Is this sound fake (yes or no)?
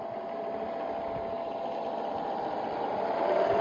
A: no